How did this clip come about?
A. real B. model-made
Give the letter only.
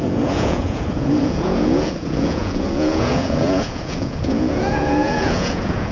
B